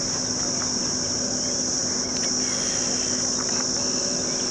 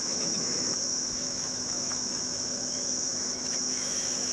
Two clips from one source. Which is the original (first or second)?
first